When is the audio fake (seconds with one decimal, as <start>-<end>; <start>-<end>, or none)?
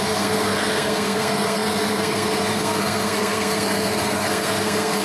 0.0-5.0